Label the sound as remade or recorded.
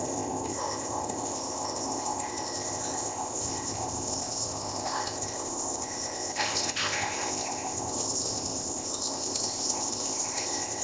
remade